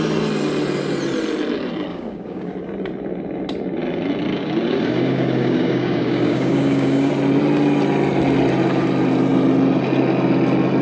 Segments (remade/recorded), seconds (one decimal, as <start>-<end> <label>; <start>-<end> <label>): 0.0-1.9 recorded; 1.9-2.5 remade; 2.5-4.3 recorded; 4.3-7.1 remade; 7.1-10.8 recorded